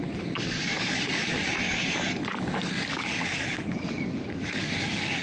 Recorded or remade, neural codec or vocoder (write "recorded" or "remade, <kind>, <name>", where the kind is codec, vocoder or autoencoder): remade, codec, DAC